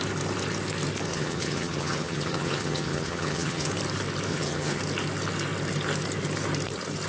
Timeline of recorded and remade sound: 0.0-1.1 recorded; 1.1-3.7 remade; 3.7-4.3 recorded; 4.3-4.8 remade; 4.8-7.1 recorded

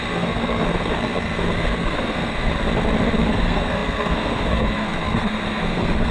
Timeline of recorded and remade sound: 0.0-2.5 remade; 2.5-3.2 recorded; 3.2-6.1 remade

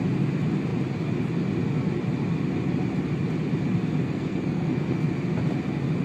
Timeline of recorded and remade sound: 0.0-4.0 recorded; 4.0-5.1 remade; 5.1-6.0 recorded

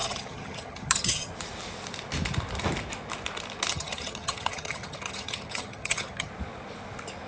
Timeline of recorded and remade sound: 0.0-1.3 remade; 1.3-3.7 recorded; 3.7-6.3 remade; 6.3-7.3 recorded

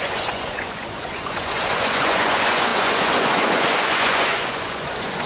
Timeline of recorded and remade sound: 0.0-5.3 remade

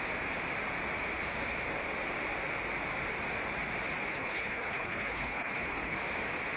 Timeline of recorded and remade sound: 0.0-4.1 recorded; 4.1-6.0 remade; 6.0-6.6 recorded